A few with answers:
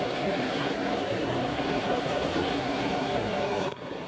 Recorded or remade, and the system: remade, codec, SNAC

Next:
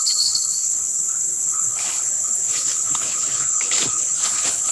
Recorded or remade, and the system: remade, codec, HILCodec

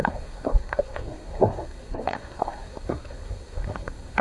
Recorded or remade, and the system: remade, codec, SNAC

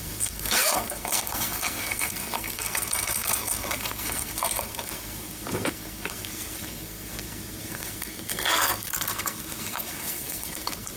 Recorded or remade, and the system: remade, codec, SNAC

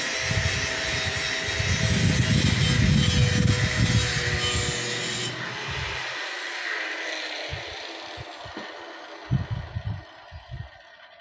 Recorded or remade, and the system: recorded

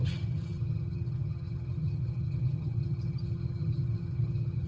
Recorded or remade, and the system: remade, vocoder, HiFi-GAN